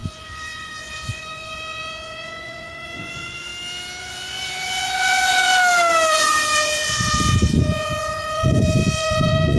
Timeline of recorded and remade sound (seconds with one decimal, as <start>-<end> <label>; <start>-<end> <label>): 0.0-3.5 remade; 3.5-4.0 recorded; 4.0-5.5 remade; 5.5-6.1 recorded; 6.1-9.6 remade